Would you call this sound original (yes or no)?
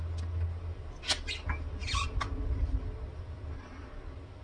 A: yes